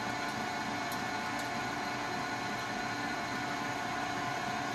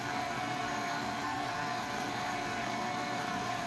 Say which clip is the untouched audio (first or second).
first